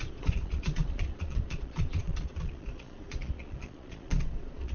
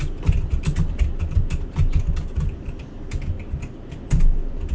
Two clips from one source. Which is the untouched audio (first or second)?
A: second